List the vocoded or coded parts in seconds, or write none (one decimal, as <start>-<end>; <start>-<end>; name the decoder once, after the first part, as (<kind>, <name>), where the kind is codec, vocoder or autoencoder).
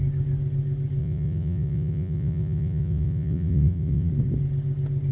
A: 1.0-4.1 (vocoder, Vocos)